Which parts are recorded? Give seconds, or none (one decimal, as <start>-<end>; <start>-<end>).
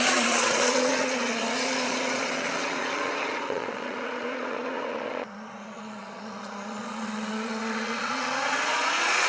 none